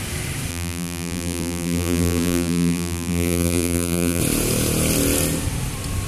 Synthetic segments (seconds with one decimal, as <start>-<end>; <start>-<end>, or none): 0.5-4.2